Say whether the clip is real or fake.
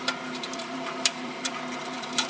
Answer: fake